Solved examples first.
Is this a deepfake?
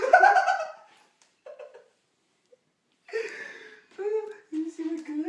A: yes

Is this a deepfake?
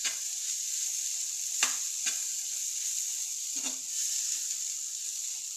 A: no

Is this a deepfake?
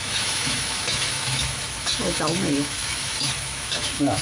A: yes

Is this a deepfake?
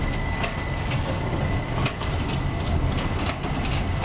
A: no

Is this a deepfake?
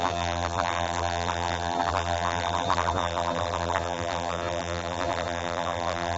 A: yes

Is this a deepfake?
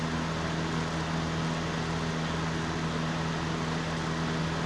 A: no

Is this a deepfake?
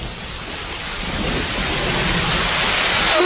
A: no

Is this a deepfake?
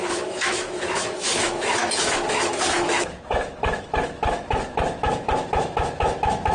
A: yes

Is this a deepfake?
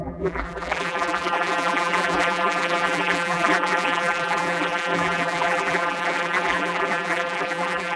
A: yes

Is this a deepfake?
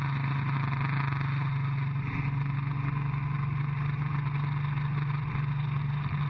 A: no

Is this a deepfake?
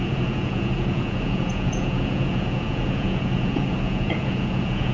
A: yes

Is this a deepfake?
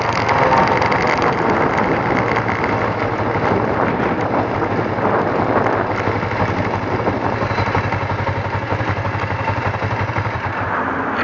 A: no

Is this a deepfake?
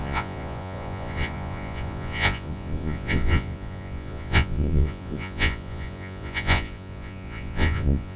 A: yes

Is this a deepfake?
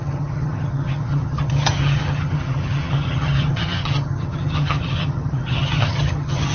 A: yes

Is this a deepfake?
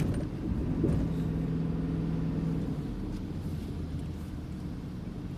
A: no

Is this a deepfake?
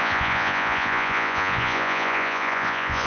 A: yes